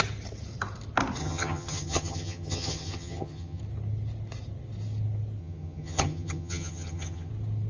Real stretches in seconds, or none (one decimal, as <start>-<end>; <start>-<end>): 0.0-1.2; 3.6-5.4; 7.3-7.7